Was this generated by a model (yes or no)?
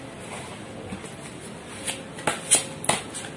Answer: no